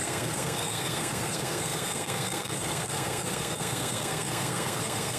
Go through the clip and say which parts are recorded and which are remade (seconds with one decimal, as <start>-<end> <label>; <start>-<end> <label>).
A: 0.0-5.2 remade